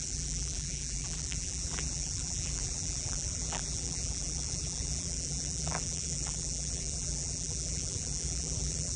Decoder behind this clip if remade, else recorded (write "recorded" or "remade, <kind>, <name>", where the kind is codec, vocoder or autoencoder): remade, vocoder, BigVGAN v2